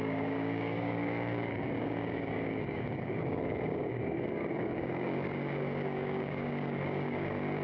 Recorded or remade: remade